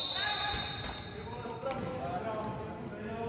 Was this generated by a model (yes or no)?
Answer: no